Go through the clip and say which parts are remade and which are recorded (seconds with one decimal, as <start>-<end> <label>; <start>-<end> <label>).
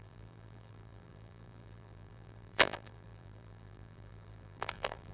0.0-5.1 remade